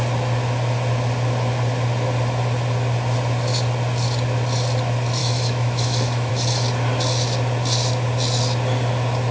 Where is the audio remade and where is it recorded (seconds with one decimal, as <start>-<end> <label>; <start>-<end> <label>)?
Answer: 0.0-5.2 recorded; 5.2-6.3 remade; 6.3-9.3 recorded